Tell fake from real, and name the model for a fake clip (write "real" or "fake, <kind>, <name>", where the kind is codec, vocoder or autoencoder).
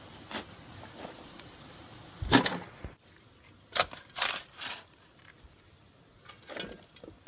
real